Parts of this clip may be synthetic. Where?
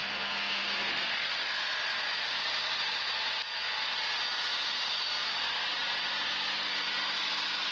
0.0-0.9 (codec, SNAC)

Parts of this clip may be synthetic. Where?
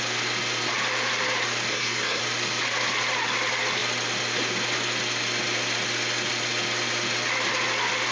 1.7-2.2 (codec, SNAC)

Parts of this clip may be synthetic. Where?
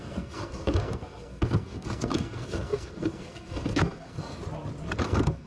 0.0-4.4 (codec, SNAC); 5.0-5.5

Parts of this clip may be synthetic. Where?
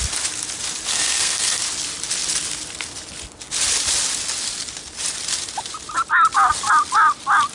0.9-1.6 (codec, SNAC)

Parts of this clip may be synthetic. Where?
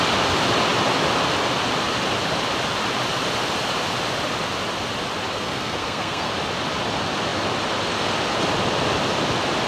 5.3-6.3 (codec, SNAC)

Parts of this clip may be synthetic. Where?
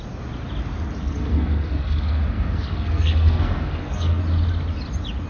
1.0-4.2 (codec, SNAC)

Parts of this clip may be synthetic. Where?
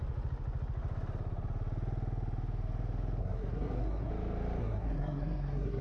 3.2-4.1 (codec, SNAC); 4.6-5.8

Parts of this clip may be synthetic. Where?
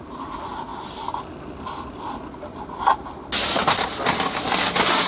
none